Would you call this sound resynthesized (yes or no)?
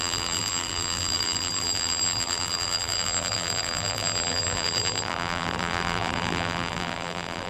yes